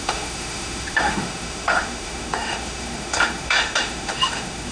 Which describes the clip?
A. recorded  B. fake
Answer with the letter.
B